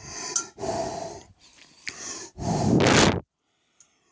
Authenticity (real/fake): real